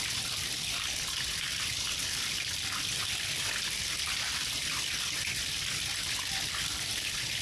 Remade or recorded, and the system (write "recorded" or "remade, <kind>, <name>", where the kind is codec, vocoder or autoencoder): recorded